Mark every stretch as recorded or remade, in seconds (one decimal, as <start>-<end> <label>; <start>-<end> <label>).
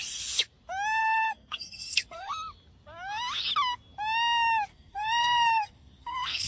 0.0-1.0 recorded; 1.0-2.3 remade; 2.3-4.7 recorded; 4.7-6.5 remade